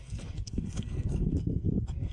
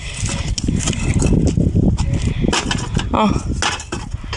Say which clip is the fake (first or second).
first